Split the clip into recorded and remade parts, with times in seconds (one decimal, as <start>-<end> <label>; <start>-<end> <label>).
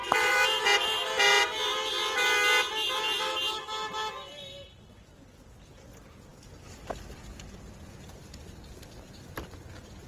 0.0-10.1 recorded